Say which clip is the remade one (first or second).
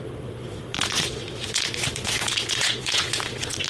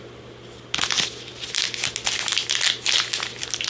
first